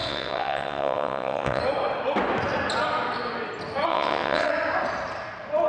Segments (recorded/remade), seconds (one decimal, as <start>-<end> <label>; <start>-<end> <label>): 0.0-1.6 remade; 1.6-3.9 recorded; 3.9-4.5 remade; 4.5-5.7 recorded